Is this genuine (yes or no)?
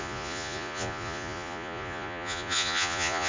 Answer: no